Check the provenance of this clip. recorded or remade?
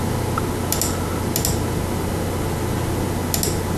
recorded